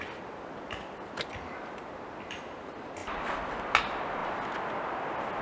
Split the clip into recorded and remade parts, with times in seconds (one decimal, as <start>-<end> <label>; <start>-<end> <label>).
0.0-5.4 recorded